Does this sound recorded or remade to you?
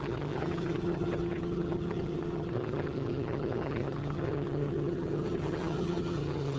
remade